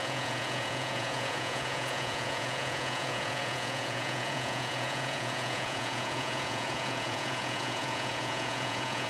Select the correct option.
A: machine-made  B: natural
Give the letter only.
A